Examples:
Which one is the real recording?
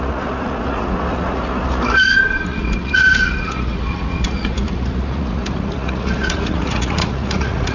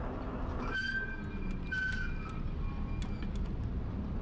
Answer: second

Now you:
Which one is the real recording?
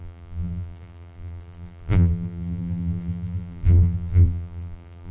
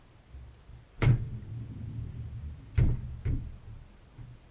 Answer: second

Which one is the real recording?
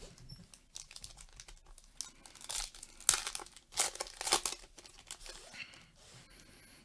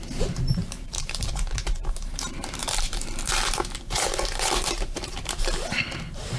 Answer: first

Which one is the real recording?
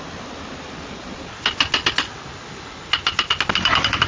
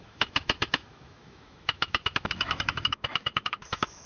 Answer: first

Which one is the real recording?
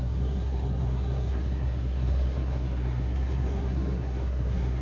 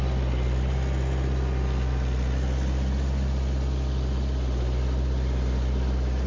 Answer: second